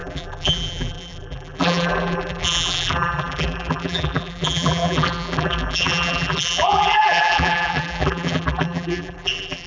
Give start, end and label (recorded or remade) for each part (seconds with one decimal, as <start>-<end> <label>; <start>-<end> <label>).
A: 0.0-9.7 remade